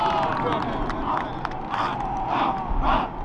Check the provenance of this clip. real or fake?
real